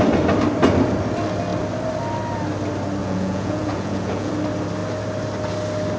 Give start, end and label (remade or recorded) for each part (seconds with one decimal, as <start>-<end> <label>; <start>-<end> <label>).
0.0-3.0 recorded; 3.0-4.3 remade; 4.3-6.0 recorded